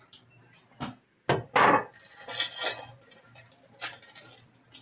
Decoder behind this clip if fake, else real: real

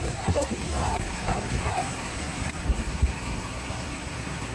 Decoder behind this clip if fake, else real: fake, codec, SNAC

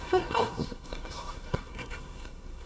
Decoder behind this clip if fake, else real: fake, codec, SNAC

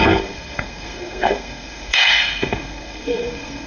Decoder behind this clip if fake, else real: fake, codec, SNAC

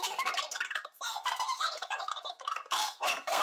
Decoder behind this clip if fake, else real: fake, codec, SNAC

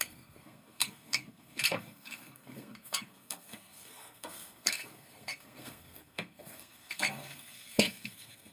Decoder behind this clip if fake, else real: fake, codec, SNAC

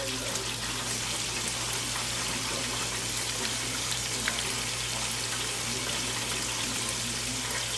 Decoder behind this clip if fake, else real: real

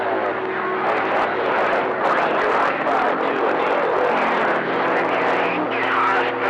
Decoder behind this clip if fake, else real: real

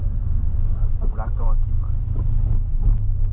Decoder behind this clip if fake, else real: real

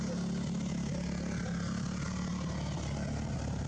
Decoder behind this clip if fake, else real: real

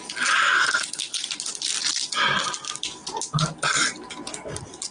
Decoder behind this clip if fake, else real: real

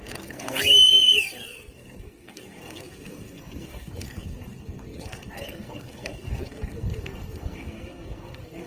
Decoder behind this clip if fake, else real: fake, codec, SNAC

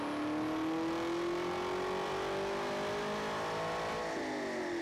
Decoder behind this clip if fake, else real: real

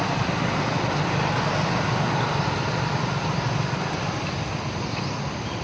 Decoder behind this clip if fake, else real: real